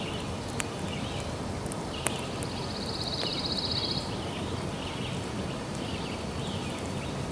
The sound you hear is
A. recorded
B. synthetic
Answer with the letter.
A